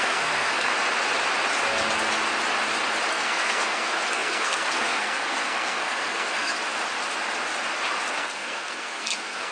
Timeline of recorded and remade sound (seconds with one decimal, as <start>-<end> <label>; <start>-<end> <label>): 0.0-0.7 remade; 0.7-3.1 recorded; 3.1-6.5 remade; 6.5-8.1 recorded; 8.1-9.5 remade